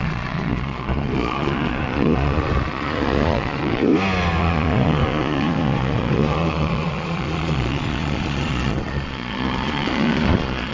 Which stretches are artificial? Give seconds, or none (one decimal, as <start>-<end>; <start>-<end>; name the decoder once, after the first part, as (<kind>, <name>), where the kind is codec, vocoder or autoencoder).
0.0-3.9 (vocoder, Vocos); 4.4-10.7